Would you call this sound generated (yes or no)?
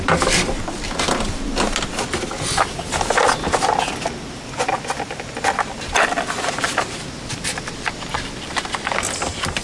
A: no